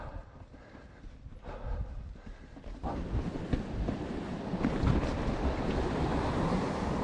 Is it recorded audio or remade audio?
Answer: recorded